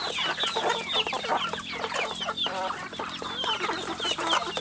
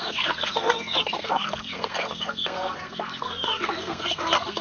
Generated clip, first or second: second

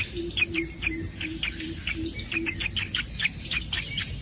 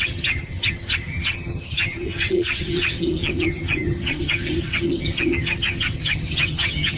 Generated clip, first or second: second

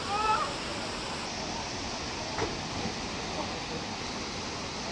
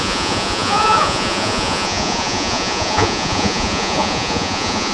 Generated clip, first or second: second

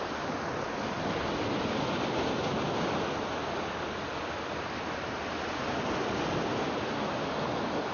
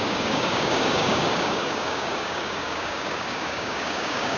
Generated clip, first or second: second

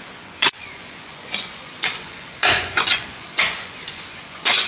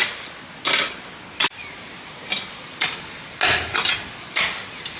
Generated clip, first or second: first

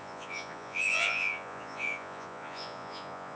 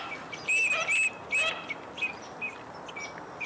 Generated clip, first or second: first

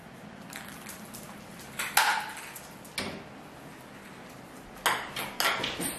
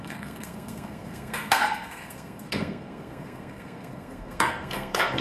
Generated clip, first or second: second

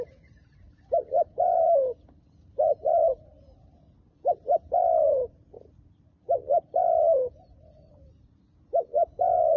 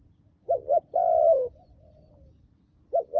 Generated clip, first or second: first